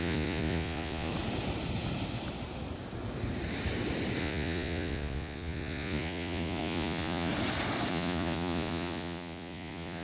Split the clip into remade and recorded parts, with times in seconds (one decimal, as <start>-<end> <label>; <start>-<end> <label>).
0.0-1.1 remade; 1.1-4.2 recorded; 4.2-7.3 remade; 7.3-7.9 recorded; 7.9-10.0 remade